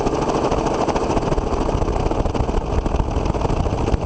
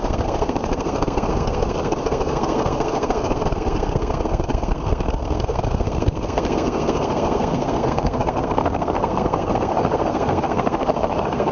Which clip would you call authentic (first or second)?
first